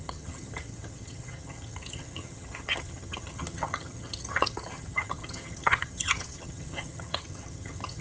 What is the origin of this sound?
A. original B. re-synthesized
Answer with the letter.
B